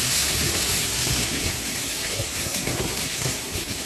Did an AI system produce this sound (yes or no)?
yes